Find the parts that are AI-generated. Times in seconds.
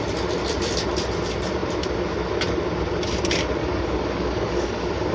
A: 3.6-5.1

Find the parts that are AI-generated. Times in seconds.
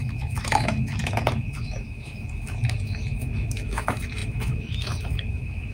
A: 0.0-5.7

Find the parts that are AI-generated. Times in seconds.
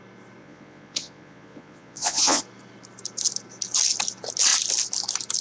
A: 0.4-2.4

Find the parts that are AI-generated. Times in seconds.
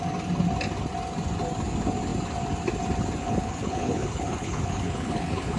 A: 3.2-5.6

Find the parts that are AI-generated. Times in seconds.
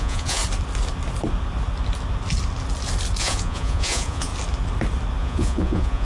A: 0.0-0.4; 3.2-4.3; 5.2-6.0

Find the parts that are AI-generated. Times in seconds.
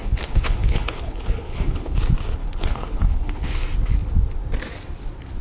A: 0.0-2.0; 2.4-3.5